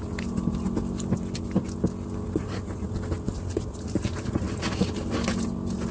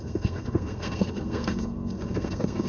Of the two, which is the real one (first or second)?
first